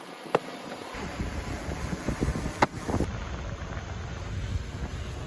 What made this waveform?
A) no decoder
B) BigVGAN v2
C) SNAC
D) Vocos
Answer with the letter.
A